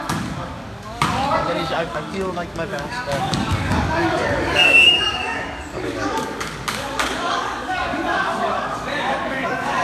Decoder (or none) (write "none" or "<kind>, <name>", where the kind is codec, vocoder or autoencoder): codec, DAC